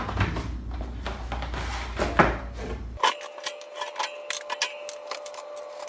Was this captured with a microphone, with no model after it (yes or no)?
yes